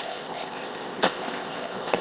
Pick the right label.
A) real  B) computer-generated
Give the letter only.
B